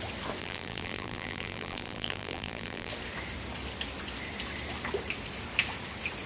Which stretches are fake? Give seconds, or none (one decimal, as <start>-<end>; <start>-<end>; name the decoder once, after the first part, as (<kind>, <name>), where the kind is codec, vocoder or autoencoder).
0.4-2.9 (vocoder, BigVGAN v2)